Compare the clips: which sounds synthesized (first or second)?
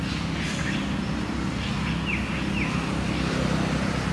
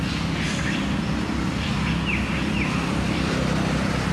second